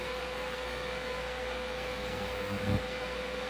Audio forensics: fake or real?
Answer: fake